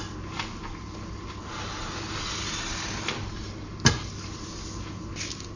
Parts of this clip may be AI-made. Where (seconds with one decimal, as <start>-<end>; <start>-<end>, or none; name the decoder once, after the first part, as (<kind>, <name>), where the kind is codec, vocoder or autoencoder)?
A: none